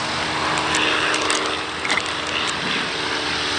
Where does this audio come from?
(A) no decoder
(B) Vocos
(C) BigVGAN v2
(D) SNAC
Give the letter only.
A